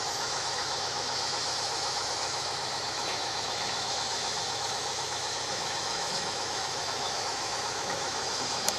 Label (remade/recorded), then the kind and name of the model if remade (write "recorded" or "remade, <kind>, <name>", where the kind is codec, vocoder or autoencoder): remade, autoencoder, DAC-VAE